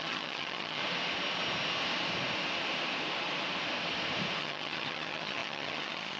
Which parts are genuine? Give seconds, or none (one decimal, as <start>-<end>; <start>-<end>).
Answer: 0.8-4.4